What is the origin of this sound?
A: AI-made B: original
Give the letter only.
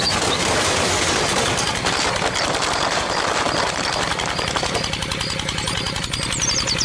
B